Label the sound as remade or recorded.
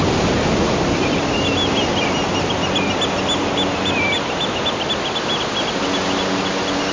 recorded